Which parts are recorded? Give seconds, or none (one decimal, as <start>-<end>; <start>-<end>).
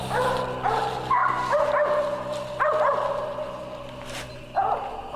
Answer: 0.0-5.2